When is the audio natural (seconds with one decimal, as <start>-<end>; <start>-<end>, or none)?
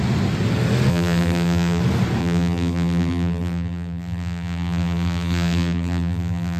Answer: 0.0-0.9; 1.8-2.2